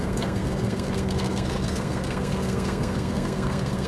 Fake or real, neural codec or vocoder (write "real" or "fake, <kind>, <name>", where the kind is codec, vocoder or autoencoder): fake, codec, SNAC